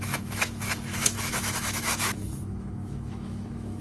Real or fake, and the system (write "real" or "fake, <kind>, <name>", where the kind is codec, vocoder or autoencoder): fake, autoencoder, DAC-VAE